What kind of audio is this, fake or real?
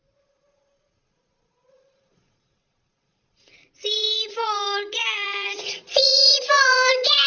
fake